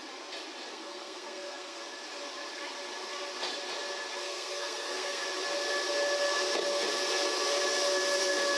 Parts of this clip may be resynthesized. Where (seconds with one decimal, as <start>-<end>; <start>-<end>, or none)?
0.7-1.8; 4.2-5.2